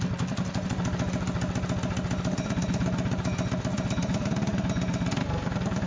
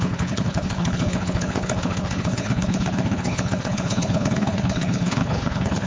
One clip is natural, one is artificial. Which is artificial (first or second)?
second